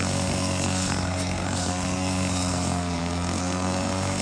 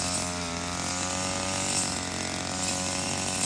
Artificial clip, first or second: first